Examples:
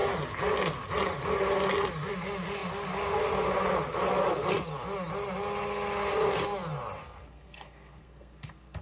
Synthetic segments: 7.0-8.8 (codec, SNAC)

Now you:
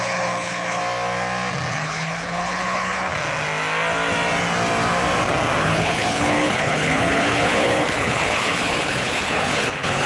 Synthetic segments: 0.0-0.8 (codec, HILCodec); 1.7-3.1; 5.6-10.1